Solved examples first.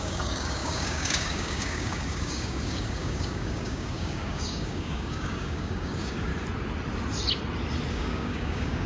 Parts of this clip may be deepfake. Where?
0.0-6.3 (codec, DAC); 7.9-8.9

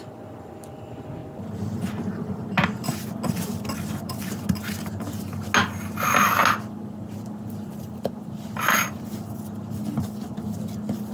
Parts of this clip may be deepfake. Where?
none